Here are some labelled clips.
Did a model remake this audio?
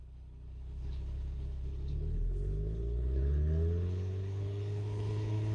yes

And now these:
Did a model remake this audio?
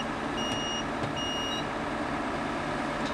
no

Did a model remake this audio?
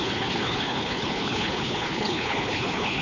yes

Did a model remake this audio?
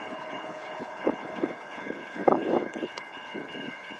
yes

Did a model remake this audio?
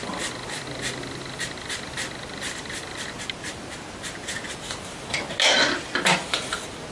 no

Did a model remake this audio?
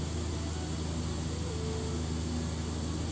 no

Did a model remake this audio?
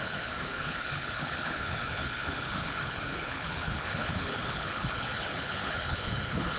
yes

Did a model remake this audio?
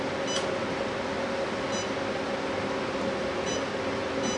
no